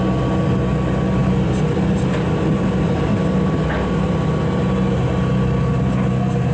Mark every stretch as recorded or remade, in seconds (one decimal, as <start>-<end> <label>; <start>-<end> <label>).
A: 0.0-1.2 recorded; 1.2-3.5 remade; 3.5-6.5 recorded